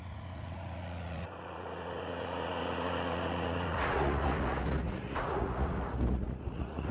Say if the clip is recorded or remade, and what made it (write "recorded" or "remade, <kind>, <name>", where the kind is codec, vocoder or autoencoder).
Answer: remade, vocoder, Vocos